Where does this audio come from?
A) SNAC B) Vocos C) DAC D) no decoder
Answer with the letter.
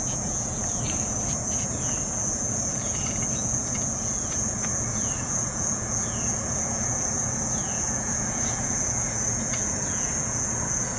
B